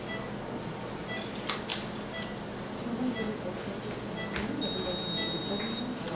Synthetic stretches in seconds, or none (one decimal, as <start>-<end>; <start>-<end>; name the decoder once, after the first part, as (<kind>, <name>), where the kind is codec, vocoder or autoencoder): none